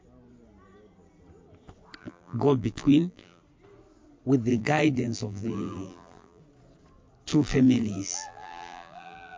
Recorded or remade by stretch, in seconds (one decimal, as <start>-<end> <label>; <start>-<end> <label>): 0.0-2.0 recorded; 2.0-3.4 remade; 3.4-4.5 recorded; 4.5-6.4 remade; 6.4-7.3 recorded; 7.3-9.4 remade